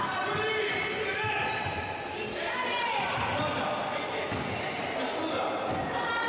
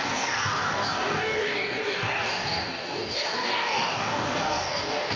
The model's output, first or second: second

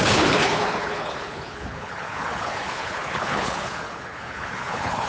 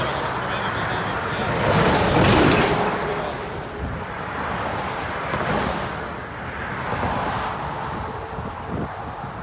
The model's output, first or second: first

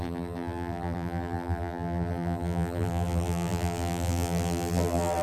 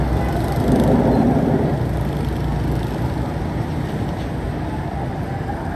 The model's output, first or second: first